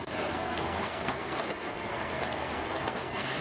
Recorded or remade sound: remade